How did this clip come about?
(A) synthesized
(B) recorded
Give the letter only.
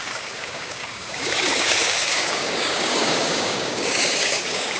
A